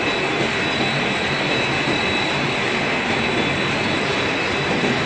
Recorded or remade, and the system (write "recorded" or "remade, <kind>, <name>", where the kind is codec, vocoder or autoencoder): recorded